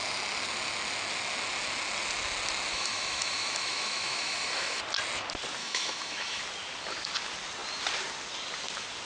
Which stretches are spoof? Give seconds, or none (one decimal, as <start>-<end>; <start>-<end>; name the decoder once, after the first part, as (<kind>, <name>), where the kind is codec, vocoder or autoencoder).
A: 2.7-4.8 (autoencoder, DAC-VAE); 5.6-6.4